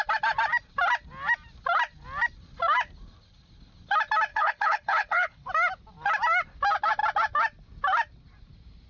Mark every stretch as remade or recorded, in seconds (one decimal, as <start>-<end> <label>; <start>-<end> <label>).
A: 0.0-4.3 recorded; 4.3-5.5 remade; 5.5-8.9 recorded